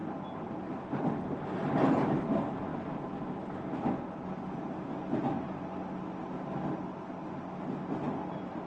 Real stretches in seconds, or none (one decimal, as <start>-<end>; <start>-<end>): 0.0-8.7